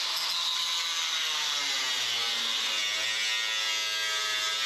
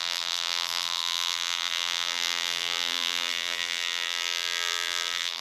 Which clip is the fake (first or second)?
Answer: second